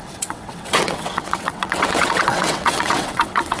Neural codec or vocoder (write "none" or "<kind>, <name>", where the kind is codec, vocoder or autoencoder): vocoder, WaveNeXt